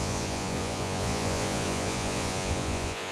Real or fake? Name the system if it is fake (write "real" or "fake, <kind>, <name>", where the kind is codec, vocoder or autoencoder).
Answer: fake, vocoder, Vocos